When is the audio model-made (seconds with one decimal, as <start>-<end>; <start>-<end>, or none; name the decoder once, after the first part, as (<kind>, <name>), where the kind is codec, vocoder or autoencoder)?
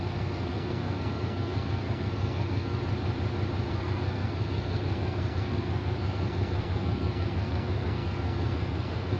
0.0-2.8 (codec, SNAC); 3.7-9.2